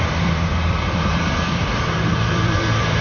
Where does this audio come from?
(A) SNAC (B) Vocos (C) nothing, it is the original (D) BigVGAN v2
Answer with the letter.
D